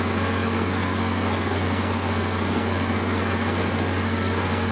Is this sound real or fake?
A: fake